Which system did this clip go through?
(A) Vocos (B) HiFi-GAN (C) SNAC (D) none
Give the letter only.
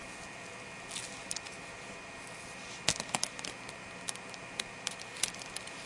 D